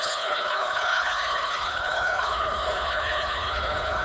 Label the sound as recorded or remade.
remade